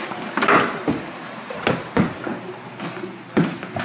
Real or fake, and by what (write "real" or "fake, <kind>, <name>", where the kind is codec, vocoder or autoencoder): real